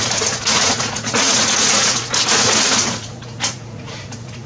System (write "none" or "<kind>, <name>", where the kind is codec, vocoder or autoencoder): vocoder, Vocos